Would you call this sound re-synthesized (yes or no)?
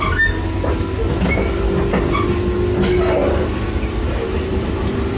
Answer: no